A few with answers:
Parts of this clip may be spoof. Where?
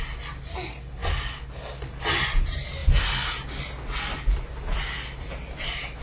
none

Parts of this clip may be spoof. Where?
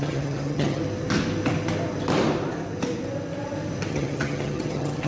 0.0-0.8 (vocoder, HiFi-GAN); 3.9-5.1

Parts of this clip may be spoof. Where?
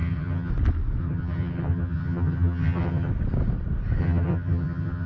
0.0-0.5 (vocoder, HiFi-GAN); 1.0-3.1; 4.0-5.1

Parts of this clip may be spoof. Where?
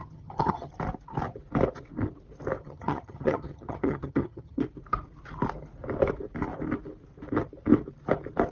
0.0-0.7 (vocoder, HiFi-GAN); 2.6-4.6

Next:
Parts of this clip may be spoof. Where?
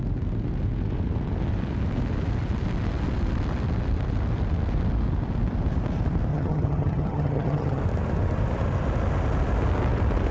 6.3-7.8 (vocoder, HiFi-GAN)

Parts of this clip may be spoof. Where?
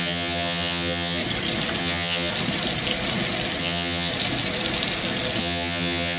0.0-1.2 (vocoder, HiFi-GAN); 1.8-2.3; 3.6-4.1; 5.4-6.2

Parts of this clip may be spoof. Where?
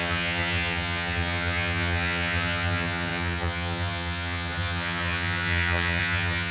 0.0-6.5 (vocoder, HiFi-GAN)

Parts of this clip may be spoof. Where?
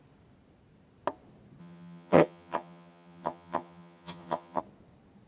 1.6-4.6 (vocoder, HiFi-GAN)